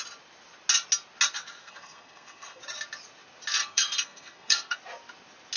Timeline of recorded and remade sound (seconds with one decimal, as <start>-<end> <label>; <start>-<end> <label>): 0.0-1.6 recorded; 1.6-2.6 remade; 2.6-3.6 recorded; 3.6-4.8 remade; 4.8-5.6 recorded